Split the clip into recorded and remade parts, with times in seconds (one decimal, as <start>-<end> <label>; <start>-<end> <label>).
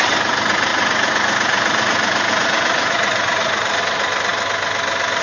0.0-0.7 recorded; 0.7-3.8 remade; 3.8-5.2 recorded